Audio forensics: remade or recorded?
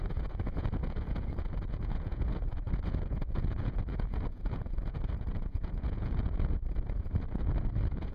remade